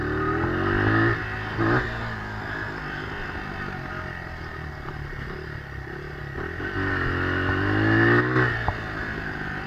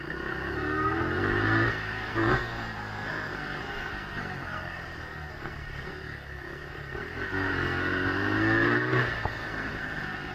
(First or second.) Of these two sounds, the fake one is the second